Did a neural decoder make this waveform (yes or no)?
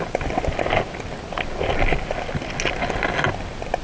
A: no